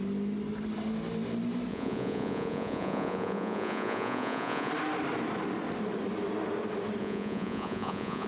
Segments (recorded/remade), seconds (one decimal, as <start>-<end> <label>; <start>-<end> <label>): 0.0-1.7 recorded; 1.7-4.7 remade; 4.7-7.0 recorded; 7.0-8.3 remade